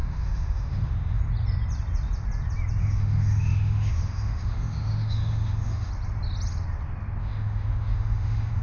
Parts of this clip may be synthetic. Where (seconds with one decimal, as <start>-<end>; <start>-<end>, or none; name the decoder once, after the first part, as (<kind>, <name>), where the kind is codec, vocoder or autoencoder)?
0.0-1.2 (autoencoder, DAC-VAE); 2.8-5.9; 7.2-8.6